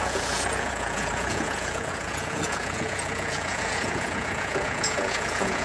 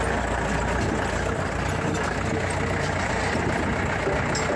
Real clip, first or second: second